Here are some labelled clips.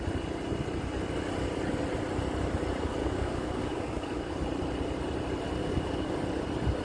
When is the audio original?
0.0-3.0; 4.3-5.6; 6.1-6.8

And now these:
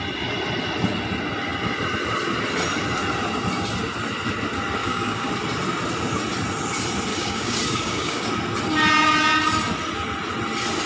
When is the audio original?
0.0-4.8; 5.3-7.1; 8.3-10.9

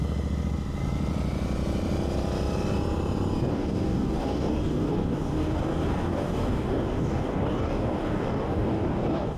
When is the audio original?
0.0-3.5